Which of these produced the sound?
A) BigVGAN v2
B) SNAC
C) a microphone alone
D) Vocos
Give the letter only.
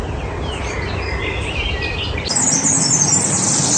C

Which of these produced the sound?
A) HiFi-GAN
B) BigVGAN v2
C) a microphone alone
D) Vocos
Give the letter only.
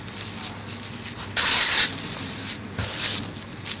C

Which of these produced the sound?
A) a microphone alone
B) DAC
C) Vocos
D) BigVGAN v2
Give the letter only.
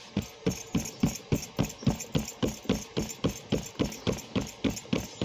A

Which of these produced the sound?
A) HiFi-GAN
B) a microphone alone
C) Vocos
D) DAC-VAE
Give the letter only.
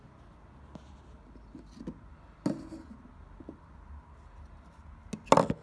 B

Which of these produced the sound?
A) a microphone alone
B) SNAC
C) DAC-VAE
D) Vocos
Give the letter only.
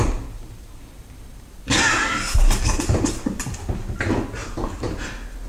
A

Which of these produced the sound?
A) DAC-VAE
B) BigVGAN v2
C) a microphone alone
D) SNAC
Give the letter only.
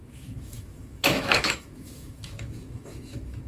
A